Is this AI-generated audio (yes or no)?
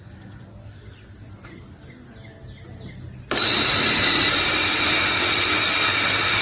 no